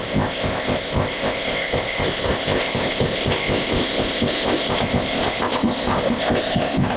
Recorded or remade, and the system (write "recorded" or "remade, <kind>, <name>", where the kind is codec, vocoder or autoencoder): remade, codec, ZipCodec